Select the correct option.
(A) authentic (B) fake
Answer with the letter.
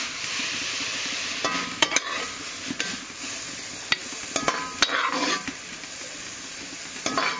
B